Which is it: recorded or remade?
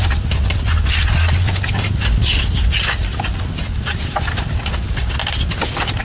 recorded